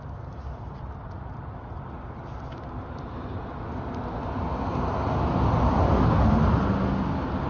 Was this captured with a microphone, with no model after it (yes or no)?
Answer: yes